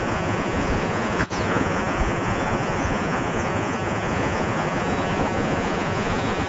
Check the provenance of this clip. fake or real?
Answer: fake